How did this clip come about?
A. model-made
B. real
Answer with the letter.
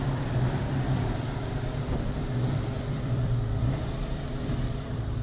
A